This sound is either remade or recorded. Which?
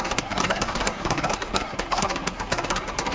remade